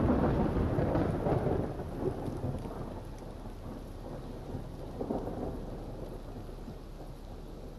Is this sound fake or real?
real